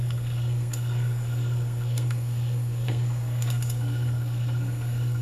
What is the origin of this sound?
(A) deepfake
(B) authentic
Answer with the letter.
A